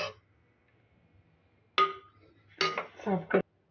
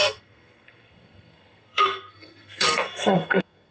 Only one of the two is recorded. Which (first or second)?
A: first